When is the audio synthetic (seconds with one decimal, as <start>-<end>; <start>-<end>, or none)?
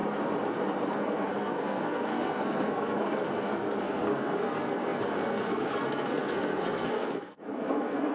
1.0-8.1